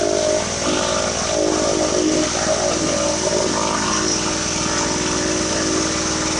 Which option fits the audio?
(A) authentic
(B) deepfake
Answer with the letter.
A